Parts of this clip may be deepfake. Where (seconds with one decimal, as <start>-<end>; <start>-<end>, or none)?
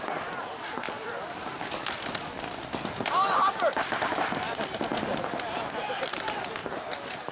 4.9-6.0; 6.6-7.3